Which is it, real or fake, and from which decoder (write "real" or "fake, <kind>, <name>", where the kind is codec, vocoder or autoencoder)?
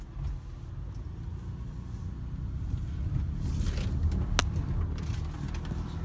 real